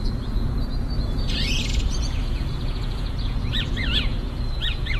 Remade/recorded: remade